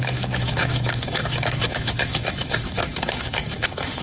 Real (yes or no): no